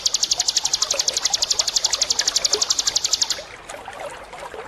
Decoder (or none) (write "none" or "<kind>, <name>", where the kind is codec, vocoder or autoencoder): none